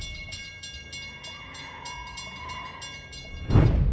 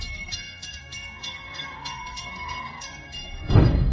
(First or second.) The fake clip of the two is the second